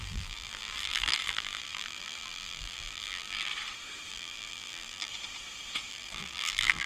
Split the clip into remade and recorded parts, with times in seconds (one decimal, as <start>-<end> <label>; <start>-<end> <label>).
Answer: 0.0-3.5 remade; 3.5-4.1 recorded; 4.1-5.1 remade; 5.1-5.9 recorded; 5.9-6.9 remade

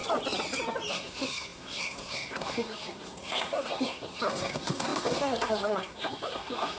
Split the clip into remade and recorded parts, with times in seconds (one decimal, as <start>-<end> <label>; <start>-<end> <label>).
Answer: 0.0-0.9 recorded; 0.9-6.8 remade